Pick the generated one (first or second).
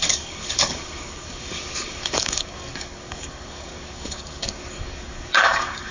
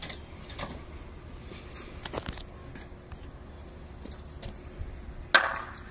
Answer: first